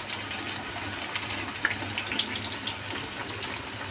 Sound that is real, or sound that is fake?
real